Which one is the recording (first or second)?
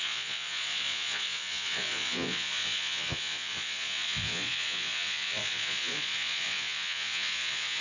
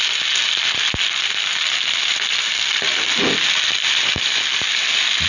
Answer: second